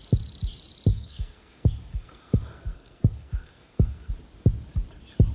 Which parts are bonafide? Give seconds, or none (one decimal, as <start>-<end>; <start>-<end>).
0.0-0.9; 4.1-5.3

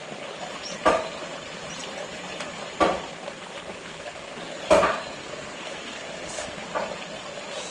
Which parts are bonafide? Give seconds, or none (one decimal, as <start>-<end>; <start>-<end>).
0.0-3.8; 4.5-5.2; 6.6-7.7

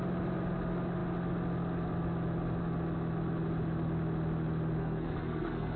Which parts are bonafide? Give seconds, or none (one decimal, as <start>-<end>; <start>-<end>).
0.0-4.8

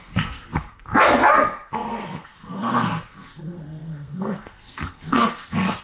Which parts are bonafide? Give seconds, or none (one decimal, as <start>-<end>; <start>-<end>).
none

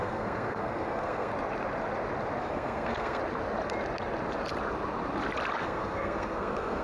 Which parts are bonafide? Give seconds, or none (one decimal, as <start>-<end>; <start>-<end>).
1.3-2.4; 3.2-5.6

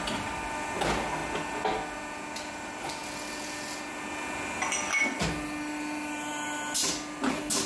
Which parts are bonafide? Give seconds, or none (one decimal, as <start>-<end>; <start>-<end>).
0.0-7.7